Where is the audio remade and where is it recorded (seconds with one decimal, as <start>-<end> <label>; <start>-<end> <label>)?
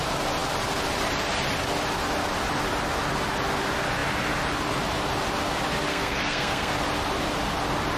0.0-5.9 recorded; 5.9-6.7 remade; 6.7-8.0 recorded